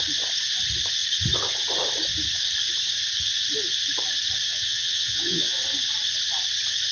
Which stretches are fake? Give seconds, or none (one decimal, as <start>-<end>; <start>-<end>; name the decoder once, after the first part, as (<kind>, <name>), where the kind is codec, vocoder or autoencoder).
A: 4.5-5.6 (vocoder, WaveNeXt)